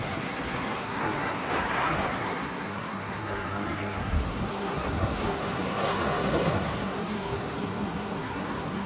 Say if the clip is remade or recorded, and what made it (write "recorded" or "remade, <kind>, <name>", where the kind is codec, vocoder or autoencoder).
remade, codec, SNAC